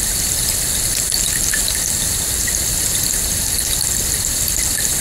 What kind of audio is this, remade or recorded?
recorded